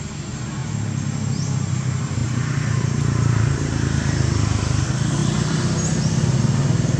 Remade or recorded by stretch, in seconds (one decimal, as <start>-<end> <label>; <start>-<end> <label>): 0.0-2.2 recorded; 2.2-4.1 remade; 4.1-7.0 recorded